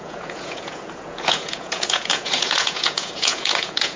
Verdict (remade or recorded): remade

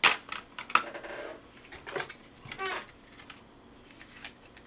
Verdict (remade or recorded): recorded